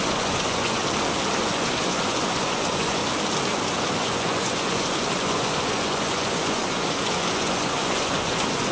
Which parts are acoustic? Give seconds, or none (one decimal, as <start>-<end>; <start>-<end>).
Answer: 0.8-1.4; 3.0-3.9